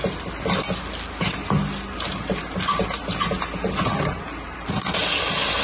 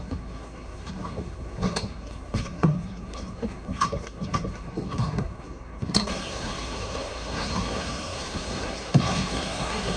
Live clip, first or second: first